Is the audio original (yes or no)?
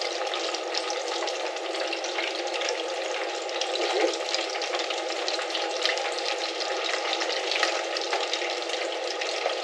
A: yes